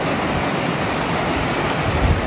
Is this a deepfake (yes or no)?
no